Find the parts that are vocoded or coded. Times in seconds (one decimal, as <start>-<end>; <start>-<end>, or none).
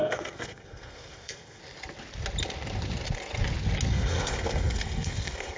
0.0-1.6; 3.9-5.6